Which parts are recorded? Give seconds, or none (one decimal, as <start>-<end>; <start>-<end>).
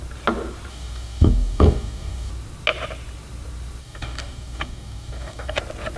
0.0-0.7; 2.3-3.8; 5.6-6.0